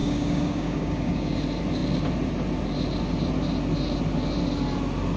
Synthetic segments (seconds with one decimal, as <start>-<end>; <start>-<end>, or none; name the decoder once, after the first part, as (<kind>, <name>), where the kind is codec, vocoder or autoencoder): 0.0-1.3 (codec, DAC)

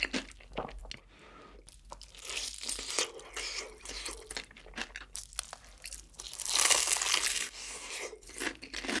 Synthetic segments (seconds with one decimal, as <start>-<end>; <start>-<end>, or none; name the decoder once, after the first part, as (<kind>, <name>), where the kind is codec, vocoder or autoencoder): 7.3-7.9 (codec, DAC)

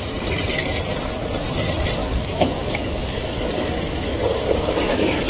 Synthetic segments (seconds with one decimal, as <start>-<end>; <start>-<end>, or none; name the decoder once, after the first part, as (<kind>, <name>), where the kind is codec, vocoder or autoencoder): 2.0-5.3 (codec, DAC)

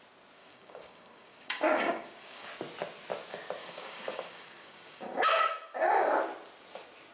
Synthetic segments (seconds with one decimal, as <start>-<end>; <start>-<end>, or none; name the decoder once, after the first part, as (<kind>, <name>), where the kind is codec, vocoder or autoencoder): 0.4-2.5 (codec, DAC); 3.6-6.1

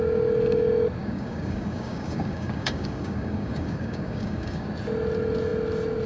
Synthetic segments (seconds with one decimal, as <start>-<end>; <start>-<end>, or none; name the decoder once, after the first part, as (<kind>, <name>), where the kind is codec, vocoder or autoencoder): 1.0-4.7 (codec, DAC)

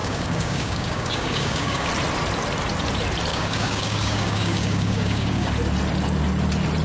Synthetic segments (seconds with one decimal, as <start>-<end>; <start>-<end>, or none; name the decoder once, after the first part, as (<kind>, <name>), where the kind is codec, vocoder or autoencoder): 0.0-1.9 (codec, DAC); 3.3-5.5

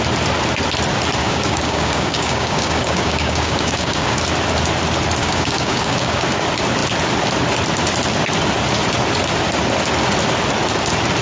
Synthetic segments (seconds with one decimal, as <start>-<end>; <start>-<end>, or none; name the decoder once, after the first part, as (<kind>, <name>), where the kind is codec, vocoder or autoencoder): 1.2-4.2 (codec, DAC); 5.2-6.2

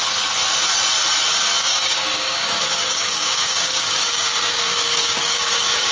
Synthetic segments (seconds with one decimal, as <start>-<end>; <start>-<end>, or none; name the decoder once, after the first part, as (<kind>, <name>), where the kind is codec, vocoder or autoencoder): 1.6-5.9 (codec, DAC)